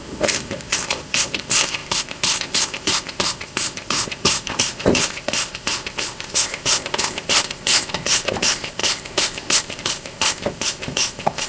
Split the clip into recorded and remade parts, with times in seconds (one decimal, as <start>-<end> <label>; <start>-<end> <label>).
0.0-11.5 remade